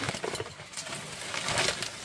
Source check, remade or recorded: recorded